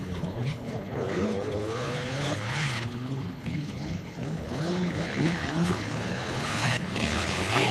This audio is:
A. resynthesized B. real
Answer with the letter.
A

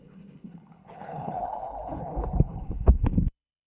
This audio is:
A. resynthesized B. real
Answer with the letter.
A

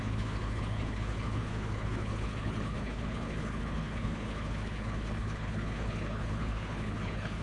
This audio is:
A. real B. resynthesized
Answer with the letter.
B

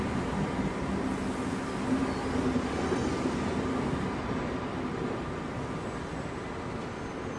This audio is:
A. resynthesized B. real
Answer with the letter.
B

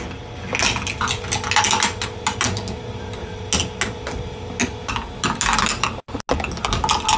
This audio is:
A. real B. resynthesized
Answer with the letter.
A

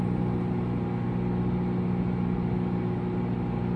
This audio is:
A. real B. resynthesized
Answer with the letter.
A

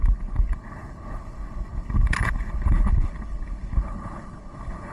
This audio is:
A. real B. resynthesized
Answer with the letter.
B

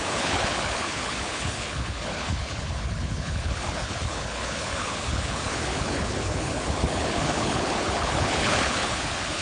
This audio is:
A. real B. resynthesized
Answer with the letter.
B